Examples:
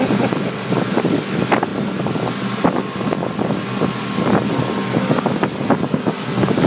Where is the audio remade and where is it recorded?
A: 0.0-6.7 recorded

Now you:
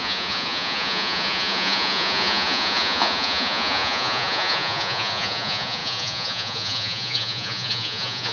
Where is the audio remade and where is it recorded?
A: 0.0-8.3 remade

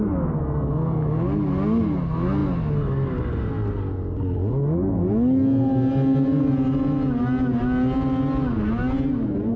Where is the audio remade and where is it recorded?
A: 0.0-9.6 recorded

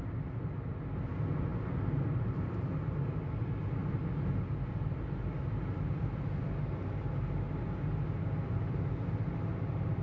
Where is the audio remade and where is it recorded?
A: 0.0-10.0 recorded

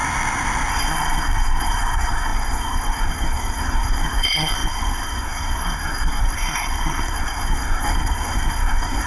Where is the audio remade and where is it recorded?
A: 0.0-0.7 recorded; 0.7-9.1 remade

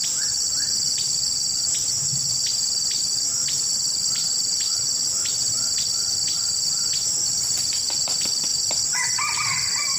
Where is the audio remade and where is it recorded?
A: 0.0-4.7 recorded; 4.7-5.7 remade; 5.7-8.5 recorded; 8.5-10.0 remade